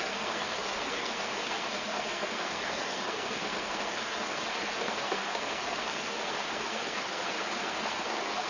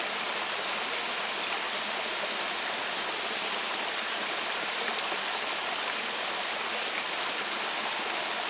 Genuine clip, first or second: second